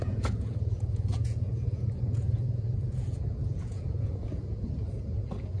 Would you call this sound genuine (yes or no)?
no